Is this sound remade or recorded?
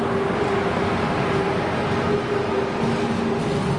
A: recorded